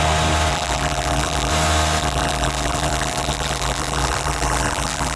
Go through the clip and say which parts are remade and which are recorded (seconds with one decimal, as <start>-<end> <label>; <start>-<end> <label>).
0.0-0.5 recorded; 0.5-1.5 remade; 1.5-2.0 recorded; 2.0-5.2 remade